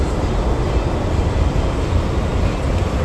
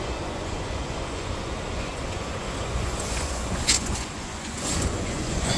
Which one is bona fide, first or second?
first